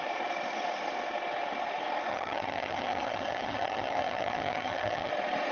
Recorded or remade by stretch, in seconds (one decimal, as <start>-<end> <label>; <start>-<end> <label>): 0.0-2.1 recorded; 2.1-5.1 remade; 5.1-5.5 recorded